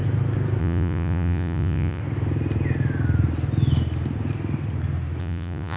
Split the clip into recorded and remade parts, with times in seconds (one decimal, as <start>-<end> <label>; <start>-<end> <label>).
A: 0.0-0.6 recorded; 0.6-2.0 remade; 2.0-5.2 recorded; 5.2-5.8 remade